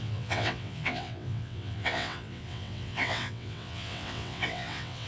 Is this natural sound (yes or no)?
no